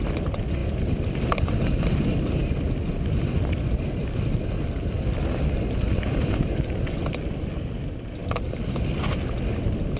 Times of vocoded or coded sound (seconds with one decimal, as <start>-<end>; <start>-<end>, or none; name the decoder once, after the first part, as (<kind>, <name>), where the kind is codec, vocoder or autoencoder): 0.6-1.5 (vocoder, BigVGAN v2)